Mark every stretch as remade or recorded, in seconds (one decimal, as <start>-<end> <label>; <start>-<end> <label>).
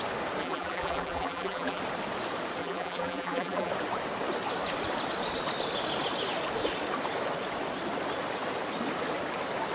0.0-0.4 recorded; 0.4-1.8 remade; 1.8-2.6 recorded; 2.6-3.7 remade; 3.7-9.7 recorded